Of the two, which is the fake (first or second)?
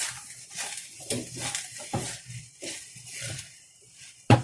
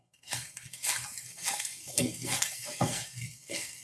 second